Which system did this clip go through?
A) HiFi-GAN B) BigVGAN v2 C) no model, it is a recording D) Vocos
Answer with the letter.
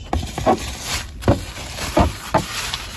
B